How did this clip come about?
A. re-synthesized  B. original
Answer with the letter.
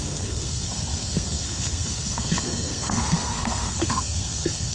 A